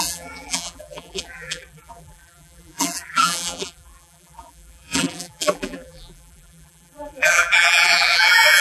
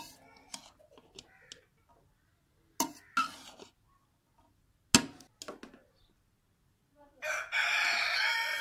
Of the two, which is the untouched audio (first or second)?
second